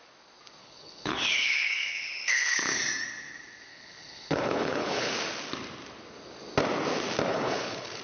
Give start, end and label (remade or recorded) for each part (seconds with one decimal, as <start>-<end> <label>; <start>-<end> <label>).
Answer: 0.0-0.6 recorded; 0.6-2.8 remade; 2.8-3.7 recorded; 3.7-5.1 remade; 5.1-7.3 recorded; 7.3-8.0 remade